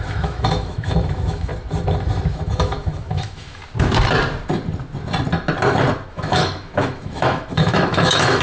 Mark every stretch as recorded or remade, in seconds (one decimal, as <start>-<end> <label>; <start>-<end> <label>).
0.0-1.5 remade; 1.5-2.3 recorded; 2.3-3.6 remade; 3.6-6.1 recorded; 6.1-8.4 remade